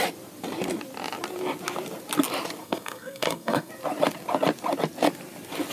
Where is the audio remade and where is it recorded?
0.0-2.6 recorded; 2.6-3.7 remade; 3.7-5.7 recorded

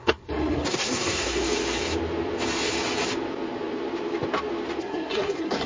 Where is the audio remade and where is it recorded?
0.0-1.4 remade; 1.4-4.8 recorded; 4.8-5.7 remade

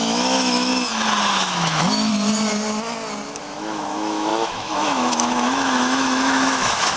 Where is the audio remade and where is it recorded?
0.0-0.7 remade; 0.7-1.2 recorded; 1.2-2.1 remade; 2.1-3.4 recorded; 3.4-7.0 remade

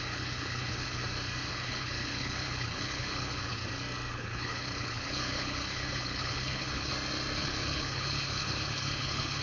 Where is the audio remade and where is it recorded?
0.0-1.0 remade; 1.0-1.5 recorded; 1.5-3.6 remade; 3.6-4.1 recorded; 4.1-6.9 remade; 6.9-7.4 recorded; 7.4-9.4 remade

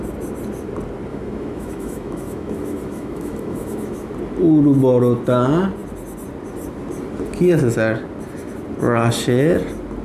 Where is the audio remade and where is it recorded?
0.0-1.1 recorded; 1.1-4.1 remade; 4.1-10.0 recorded

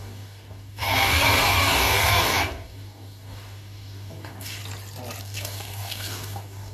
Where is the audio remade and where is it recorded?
0.0-4.6 remade; 4.6-5.2 recorded; 5.2-6.7 remade

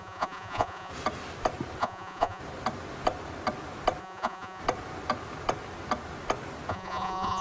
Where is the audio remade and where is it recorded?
0.0-0.9 remade; 0.9-1.8 recorded; 1.8-2.4 remade; 2.4-4.0 recorded; 4.0-4.6 remade; 4.6-6.7 recorded; 6.7-7.4 remade

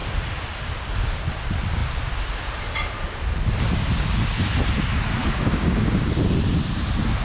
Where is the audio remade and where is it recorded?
0.0-5.2 recorded; 5.2-6.1 remade; 6.1-7.2 recorded